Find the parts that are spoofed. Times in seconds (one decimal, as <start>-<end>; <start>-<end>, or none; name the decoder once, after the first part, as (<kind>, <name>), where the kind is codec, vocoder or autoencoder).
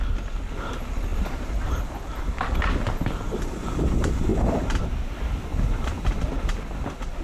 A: 1.1-1.8 (vocoder, BigVGAN v2); 4.3-4.8; 5.5-6.0